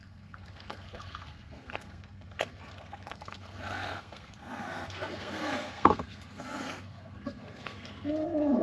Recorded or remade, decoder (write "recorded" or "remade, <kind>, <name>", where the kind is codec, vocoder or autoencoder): remade, codec, SNAC